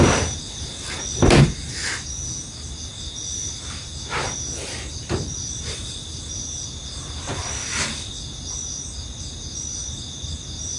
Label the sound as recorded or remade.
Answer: recorded